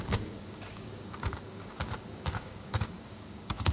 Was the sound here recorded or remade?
remade